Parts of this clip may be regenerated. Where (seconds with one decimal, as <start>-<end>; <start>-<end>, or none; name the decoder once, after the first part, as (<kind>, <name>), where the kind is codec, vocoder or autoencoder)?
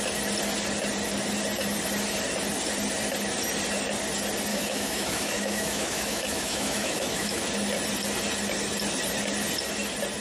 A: 4.5-7.4 (autoencoder, DAC-VAE)